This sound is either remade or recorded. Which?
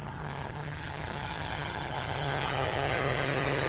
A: remade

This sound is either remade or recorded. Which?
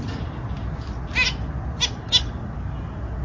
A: recorded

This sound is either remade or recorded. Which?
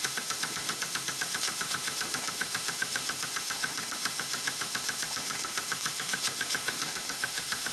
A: remade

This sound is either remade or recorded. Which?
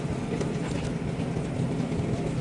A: recorded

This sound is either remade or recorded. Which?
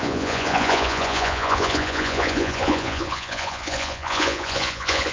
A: remade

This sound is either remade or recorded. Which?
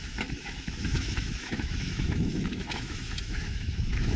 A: remade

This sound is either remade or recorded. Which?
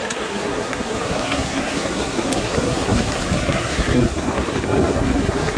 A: remade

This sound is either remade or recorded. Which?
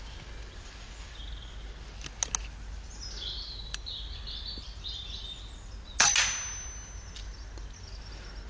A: recorded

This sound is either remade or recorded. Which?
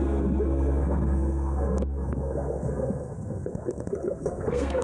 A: remade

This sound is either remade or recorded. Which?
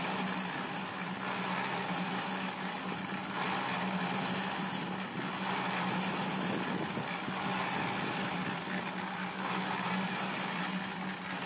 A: recorded